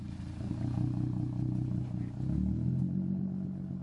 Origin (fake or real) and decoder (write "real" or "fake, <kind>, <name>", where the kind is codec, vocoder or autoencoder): real